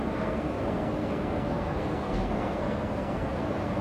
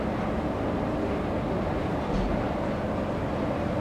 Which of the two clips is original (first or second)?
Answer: second